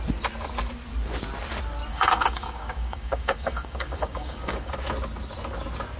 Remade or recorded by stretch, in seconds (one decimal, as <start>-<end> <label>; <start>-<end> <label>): 0.0-1.9 recorded; 1.9-4.7 remade; 4.7-6.0 recorded